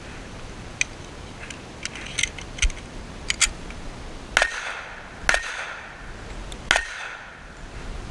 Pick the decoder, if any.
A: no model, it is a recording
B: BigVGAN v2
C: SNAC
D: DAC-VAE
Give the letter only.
A